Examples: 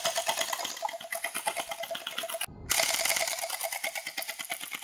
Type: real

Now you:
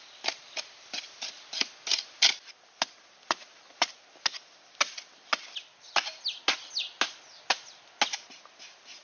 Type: real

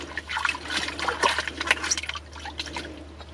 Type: real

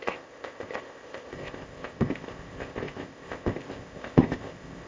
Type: fake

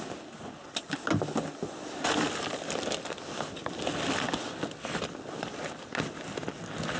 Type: real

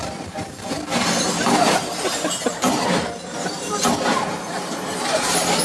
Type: fake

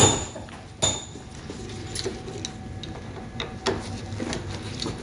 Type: real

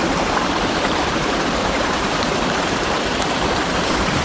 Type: fake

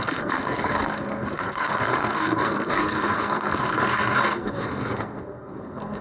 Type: fake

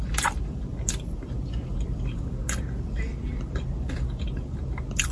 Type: real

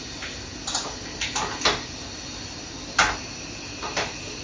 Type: real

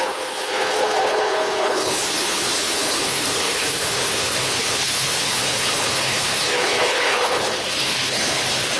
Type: fake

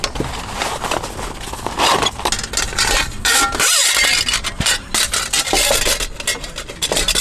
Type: real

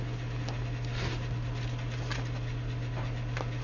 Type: real